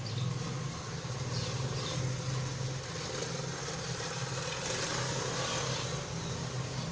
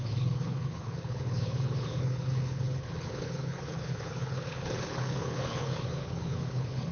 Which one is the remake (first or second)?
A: second